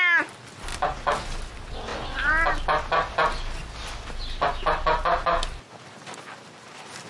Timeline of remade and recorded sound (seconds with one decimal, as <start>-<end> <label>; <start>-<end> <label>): 0.0-7.1 recorded